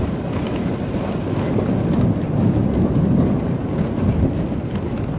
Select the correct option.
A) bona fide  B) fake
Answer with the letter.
A